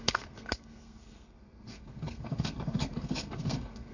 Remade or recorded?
remade